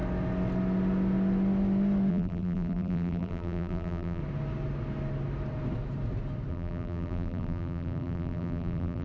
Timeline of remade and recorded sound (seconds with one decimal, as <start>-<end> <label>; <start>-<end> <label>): 0.0-2.1 recorded; 2.1-4.2 remade; 4.2-6.5 recorded; 6.5-9.0 remade